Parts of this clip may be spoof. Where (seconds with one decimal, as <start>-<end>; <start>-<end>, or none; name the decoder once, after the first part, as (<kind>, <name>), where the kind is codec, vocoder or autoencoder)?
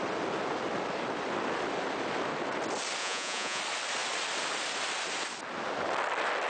3.0-3.6 (vocoder, Vocos)